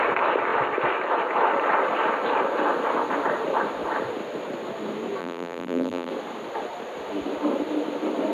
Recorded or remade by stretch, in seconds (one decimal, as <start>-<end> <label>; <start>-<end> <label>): 0.0-5.2 recorded; 5.2-6.1 remade; 6.1-8.3 recorded